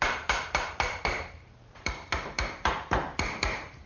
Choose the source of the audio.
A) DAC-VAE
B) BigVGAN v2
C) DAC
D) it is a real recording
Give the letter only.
B